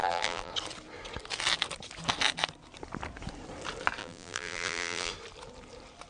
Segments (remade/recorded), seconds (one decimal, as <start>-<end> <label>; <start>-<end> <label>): 0.0-0.5 remade; 0.5-4.0 recorded; 4.0-5.1 remade; 5.1-6.1 recorded